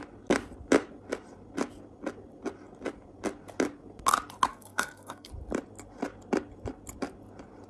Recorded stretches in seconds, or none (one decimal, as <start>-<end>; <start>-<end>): 0.0-4.5; 5.3-7.7